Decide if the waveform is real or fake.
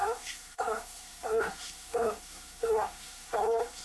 fake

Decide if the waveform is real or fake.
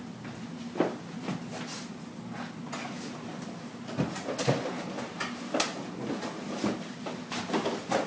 real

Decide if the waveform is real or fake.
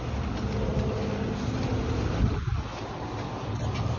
real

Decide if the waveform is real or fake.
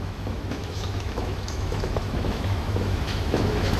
fake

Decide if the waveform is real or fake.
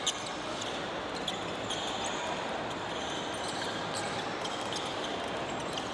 real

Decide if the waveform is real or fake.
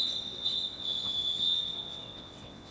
fake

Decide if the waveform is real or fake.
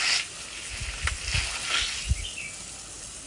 real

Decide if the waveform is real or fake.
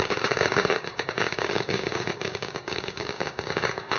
fake